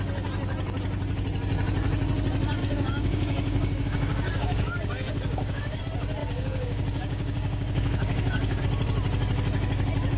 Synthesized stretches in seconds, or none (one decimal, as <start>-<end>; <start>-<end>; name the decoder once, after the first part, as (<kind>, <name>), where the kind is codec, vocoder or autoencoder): 2.6-5.8 (codec, DAC); 6.2-8.6